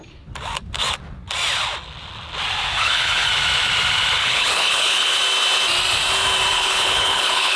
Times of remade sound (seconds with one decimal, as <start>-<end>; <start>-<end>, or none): 2.7-3.3; 4.2-5.2; 6.5-7.6